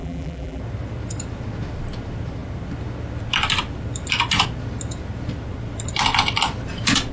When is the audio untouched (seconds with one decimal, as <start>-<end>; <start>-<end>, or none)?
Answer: 0.6-7.1